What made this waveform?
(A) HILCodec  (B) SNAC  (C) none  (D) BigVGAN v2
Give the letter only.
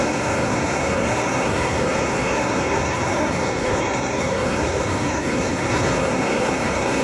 B